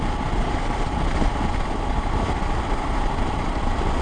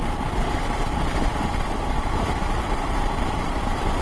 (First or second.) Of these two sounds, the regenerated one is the second